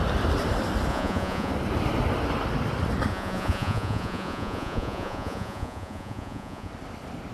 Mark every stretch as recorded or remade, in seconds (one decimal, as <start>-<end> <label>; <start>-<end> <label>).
0.0-0.9 recorded; 0.9-1.5 remade; 1.5-3.1 recorded; 3.1-6.7 remade; 6.7-7.3 recorded